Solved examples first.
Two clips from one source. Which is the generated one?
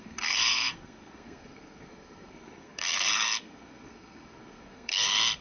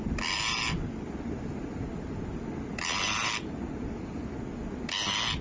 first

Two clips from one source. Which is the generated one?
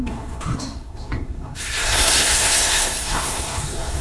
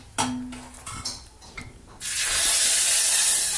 first